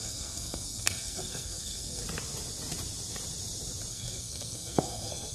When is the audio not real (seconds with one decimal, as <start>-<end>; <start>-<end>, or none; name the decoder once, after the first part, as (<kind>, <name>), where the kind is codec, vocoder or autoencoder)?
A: 0.0-2.0 (codec, SNAC); 3.9-5.3